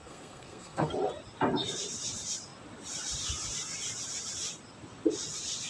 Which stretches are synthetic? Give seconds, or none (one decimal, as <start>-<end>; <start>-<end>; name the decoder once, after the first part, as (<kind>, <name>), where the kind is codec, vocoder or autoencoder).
0.0-0.9 (codec, SNAC)

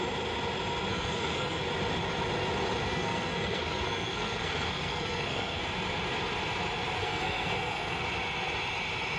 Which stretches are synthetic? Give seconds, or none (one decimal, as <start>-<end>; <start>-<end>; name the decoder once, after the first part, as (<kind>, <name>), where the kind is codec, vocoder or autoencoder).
0.9-1.6 (codec, SNAC); 2.9-5.6; 7.0-8.0

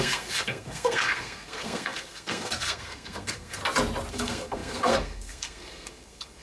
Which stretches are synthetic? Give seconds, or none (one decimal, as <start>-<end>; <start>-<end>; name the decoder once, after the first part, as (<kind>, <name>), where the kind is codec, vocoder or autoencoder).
0.0-3.6 (codec, SNAC); 4.1-6.4

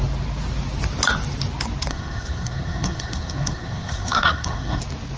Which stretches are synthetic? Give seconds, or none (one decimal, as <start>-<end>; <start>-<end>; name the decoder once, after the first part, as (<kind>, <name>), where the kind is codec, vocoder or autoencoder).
1.9-4.8 (codec, SNAC)

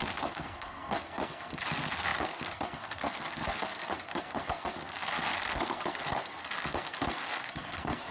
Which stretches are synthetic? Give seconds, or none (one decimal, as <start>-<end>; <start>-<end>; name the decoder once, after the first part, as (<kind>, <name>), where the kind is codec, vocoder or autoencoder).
0.0-8.1 (codec, SNAC)